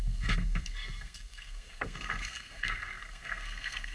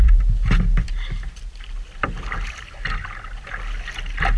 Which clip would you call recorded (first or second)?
second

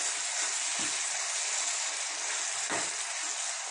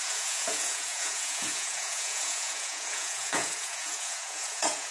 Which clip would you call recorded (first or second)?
first